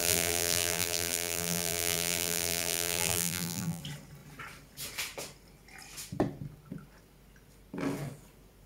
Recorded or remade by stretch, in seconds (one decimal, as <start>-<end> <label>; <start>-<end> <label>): 0.0-3.8 remade; 3.8-8.7 recorded